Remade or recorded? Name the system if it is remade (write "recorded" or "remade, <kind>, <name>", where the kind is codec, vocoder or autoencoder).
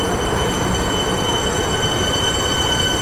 recorded